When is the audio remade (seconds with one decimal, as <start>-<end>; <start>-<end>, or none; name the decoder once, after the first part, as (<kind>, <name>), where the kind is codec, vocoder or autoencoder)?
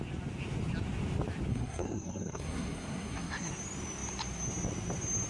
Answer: 1.5-3.5 (codec, SNAC)